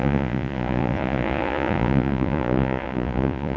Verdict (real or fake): fake